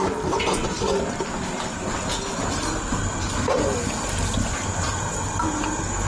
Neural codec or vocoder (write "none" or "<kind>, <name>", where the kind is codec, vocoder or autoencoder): none